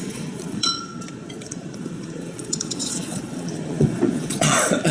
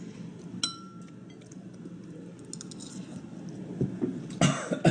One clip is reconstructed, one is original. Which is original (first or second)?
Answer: second